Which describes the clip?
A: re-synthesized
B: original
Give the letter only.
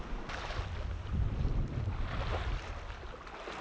B